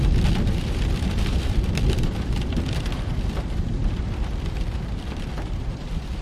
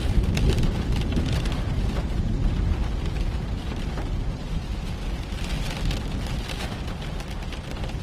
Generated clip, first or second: first